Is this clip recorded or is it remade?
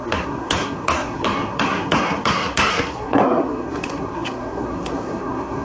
remade